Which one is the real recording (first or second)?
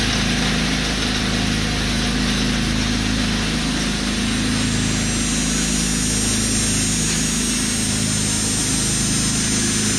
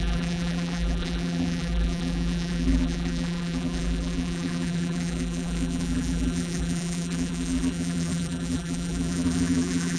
first